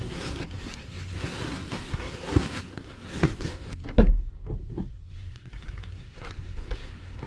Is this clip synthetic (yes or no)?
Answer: yes